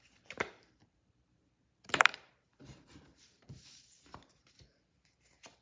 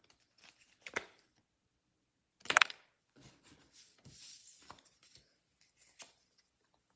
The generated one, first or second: first